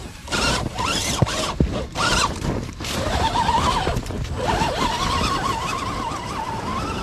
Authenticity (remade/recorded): remade